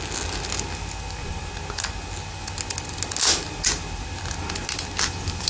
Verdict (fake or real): real